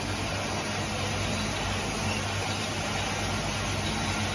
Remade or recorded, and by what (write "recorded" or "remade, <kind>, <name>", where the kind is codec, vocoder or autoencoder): recorded